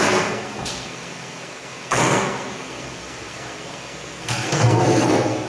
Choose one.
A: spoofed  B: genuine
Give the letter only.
A